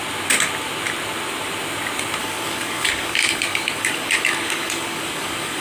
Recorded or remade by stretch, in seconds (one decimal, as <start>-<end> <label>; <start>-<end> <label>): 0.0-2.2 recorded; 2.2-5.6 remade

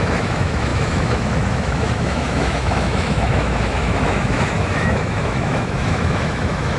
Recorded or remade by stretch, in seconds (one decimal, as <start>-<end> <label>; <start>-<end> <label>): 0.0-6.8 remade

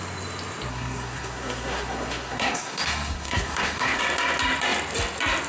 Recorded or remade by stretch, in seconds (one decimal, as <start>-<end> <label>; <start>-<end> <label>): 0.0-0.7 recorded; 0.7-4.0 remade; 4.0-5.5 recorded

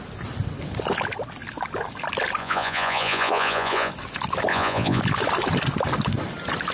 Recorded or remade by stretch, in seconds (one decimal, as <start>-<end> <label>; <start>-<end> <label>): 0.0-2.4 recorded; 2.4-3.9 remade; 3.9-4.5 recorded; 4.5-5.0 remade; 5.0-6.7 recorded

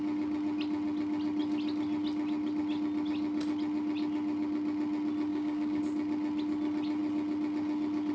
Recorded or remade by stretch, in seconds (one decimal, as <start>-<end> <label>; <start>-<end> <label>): 0.0-5.3 recorded; 5.3-5.8 remade; 5.8-8.1 recorded